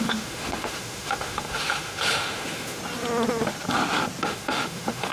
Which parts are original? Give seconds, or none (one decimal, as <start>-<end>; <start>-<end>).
2.8-4.2